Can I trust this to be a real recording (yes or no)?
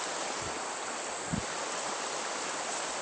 yes